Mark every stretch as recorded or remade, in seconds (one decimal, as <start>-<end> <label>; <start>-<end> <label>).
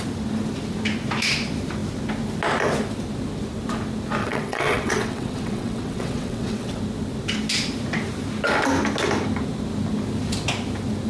0.0-4.2 recorded; 4.2-6.8 remade; 6.8-11.1 recorded